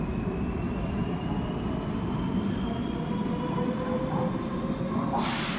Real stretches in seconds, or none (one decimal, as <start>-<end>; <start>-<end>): 0.0-5.6